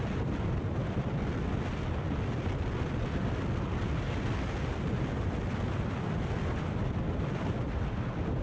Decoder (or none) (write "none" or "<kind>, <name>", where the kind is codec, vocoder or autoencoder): none